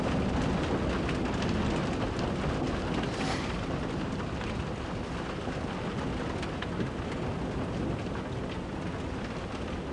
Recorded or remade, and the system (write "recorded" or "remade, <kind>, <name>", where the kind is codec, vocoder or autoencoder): recorded